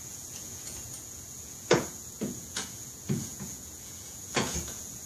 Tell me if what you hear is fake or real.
fake